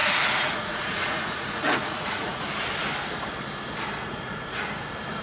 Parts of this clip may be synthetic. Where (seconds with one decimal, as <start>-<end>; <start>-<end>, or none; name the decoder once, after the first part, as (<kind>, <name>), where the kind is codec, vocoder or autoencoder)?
0.0-2.4 (vocoder, Vocos); 4.0-4.6